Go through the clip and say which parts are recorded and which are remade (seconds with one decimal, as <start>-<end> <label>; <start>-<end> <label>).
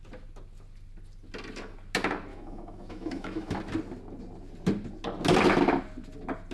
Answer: 0.0-2.3 recorded; 2.3-3.6 remade; 3.6-6.5 recorded